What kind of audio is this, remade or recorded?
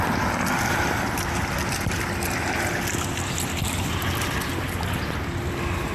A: recorded